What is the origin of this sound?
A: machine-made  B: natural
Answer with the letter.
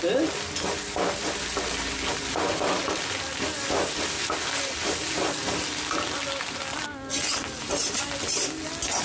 B